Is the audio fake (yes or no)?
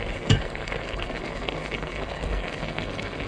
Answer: yes